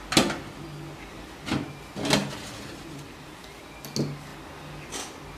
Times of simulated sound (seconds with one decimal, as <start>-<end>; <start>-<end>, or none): 2.2-3.5